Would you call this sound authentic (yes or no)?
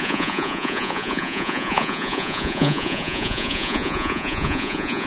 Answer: no